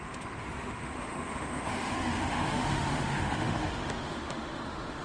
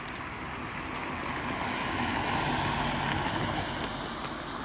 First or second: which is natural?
second